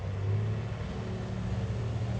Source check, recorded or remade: recorded